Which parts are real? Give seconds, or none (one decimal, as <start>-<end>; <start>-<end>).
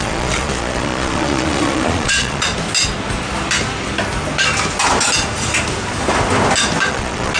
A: 2.5-6.9